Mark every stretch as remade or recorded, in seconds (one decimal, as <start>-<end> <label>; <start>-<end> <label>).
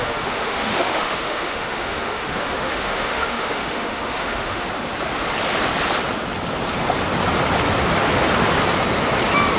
0.0-4.7 remade; 4.7-9.6 recorded